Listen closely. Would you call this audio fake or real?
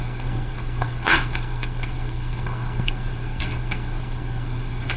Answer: fake